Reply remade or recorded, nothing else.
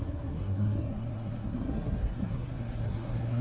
remade